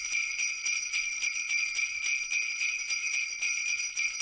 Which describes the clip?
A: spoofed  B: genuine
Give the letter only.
B